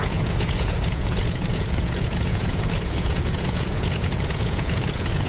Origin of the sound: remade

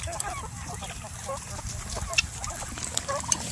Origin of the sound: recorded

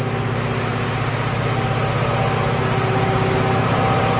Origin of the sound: recorded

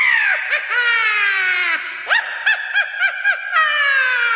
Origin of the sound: recorded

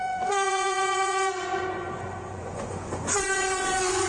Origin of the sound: remade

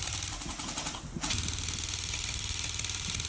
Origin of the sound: recorded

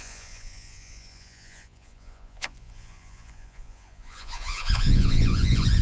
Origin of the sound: remade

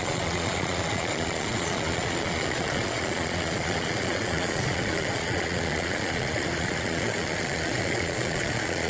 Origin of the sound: remade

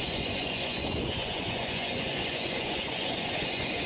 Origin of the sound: remade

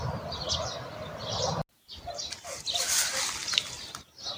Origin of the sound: recorded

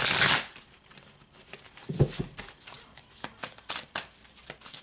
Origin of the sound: recorded